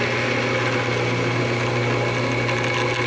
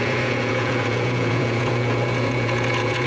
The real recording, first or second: first